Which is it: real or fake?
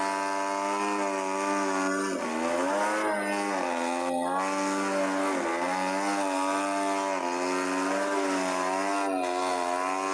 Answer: real